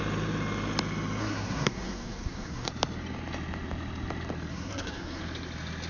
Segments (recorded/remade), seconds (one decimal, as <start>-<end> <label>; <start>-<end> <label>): 0.0-1.2 recorded; 1.2-2.7 remade; 2.7-4.5 recorded; 4.5-5.2 remade; 5.2-5.9 recorded